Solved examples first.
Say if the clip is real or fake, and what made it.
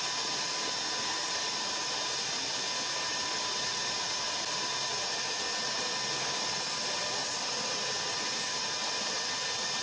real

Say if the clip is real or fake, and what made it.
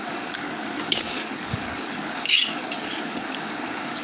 fake, codec, DAC